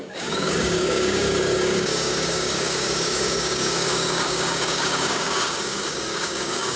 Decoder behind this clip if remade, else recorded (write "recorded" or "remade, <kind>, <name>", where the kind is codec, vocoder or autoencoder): remade, codec, DAC